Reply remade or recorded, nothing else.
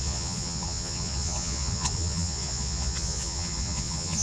remade